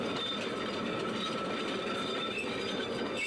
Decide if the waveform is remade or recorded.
recorded